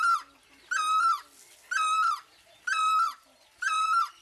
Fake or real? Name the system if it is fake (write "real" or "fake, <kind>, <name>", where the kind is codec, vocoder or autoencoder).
real